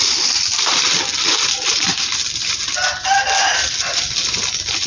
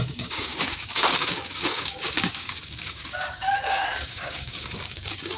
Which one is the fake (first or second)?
second